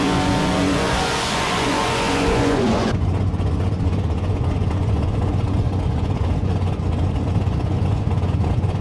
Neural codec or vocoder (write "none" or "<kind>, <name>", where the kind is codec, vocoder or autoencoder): vocoder, Vocos